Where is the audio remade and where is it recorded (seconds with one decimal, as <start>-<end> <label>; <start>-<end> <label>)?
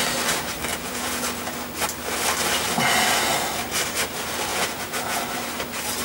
0.0-0.7 recorded; 0.7-1.2 remade; 1.2-4.5 recorded; 4.5-5.2 remade; 5.2-6.0 recorded